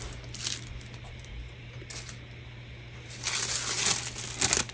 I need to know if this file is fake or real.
real